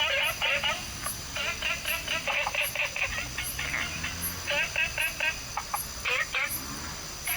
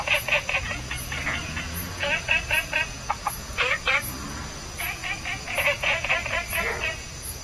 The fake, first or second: second